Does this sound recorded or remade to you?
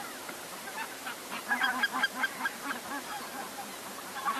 remade